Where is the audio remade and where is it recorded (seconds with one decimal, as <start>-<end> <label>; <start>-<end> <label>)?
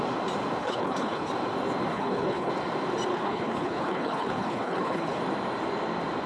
0.0-0.6 recorded; 0.6-1.3 remade; 1.3-1.9 recorded; 1.9-2.5 remade; 2.5-3.1 recorded; 3.1-5.2 remade; 5.2-6.3 recorded